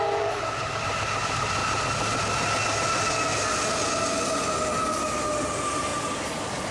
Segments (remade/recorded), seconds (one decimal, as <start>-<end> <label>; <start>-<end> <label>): 0.0-1.6 remade; 1.6-5.4 recorded; 5.4-5.9 remade; 5.9-6.7 recorded

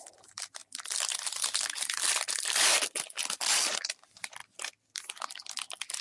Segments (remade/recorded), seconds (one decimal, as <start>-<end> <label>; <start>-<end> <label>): 0.0-0.6 remade; 0.6-3.2 recorded; 3.2-4.4 remade; 4.4-6.0 recorded

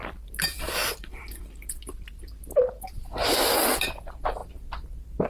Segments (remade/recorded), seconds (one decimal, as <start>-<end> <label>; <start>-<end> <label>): 0.0-1.3 remade; 1.3-5.3 recorded